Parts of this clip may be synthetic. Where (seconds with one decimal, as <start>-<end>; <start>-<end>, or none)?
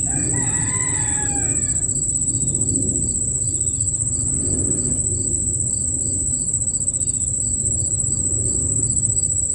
none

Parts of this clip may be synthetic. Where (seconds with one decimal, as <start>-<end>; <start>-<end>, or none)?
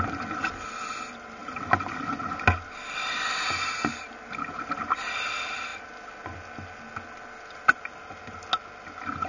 1.4-2.3; 3.9-4.6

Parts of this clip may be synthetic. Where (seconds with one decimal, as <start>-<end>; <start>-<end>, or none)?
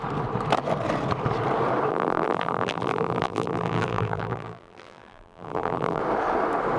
1.9-6.0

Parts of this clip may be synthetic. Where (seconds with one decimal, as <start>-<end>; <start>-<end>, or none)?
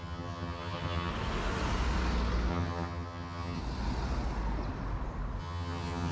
0.0-1.1; 2.5-3.6; 5.4-6.1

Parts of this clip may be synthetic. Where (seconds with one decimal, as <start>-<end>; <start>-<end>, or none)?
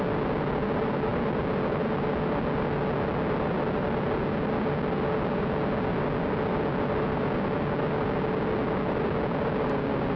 none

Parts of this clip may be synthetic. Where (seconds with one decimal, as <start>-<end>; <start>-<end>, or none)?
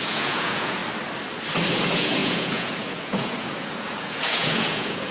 0.0-0.8; 1.7-5.1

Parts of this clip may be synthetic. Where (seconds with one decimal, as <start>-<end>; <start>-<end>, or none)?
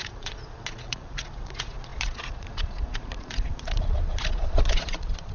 0.0-5.3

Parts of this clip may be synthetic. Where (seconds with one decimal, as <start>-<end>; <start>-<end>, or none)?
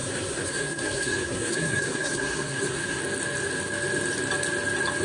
0.0-3.0